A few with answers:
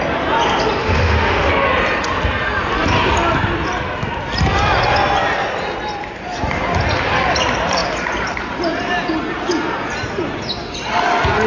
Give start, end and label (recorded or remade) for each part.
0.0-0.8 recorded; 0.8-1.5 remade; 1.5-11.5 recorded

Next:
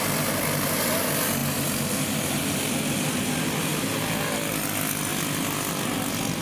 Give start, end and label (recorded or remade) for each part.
0.0-6.4 recorded

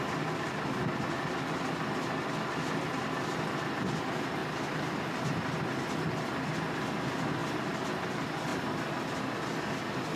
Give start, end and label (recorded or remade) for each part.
0.0-10.2 recorded

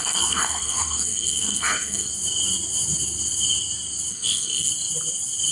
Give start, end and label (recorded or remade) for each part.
0.0-2.1 remade; 2.1-4.1 recorded; 4.1-4.7 remade; 4.7-5.5 recorded

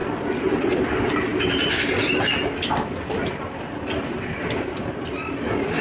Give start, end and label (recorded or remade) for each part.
0.0-5.8 recorded

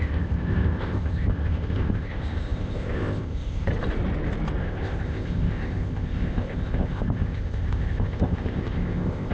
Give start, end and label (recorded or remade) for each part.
0.0-3.7 remade; 3.7-4.6 recorded; 4.6-9.3 remade

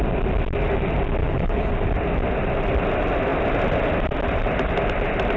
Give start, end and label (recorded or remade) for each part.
0.0-1.2 recorded; 1.2-1.7 remade; 1.7-5.4 recorded

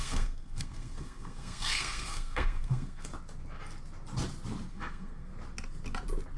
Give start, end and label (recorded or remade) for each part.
0.0-3.1 remade; 3.1-4.7 recorded; 4.7-5.3 remade; 5.3-6.4 recorded